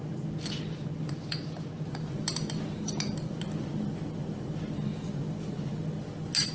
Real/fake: real